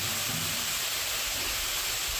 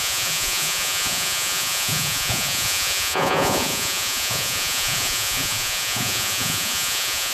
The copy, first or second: second